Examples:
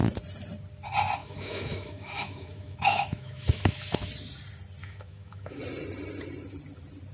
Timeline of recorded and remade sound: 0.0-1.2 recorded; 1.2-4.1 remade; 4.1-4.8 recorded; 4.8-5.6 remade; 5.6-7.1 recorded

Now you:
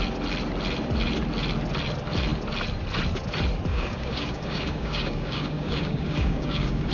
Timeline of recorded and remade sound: 0.0-3.7 recorded; 3.7-6.9 remade

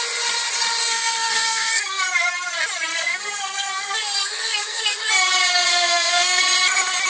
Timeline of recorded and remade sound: 0.0-0.8 recorded; 0.8-2.0 remade; 2.0-2.9 recorded; 2.9-5.1 remade; 5.1-5.7 recorded; 5.7-6.4 remade; 6.4-7.1 recorded

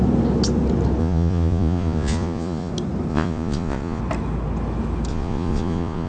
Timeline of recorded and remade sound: 0.0-1.0 recorded; 1.0-2.7 remade; 2.7-3.1 recorded; 3.1-4.0 remade; 4.0-5.1 recorded; 5.1-6.1 remade